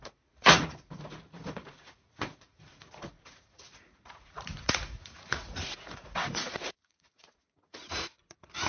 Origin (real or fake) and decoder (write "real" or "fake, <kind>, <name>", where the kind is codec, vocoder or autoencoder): fake, vocoder, Vocos